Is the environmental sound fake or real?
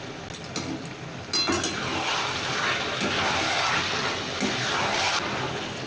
real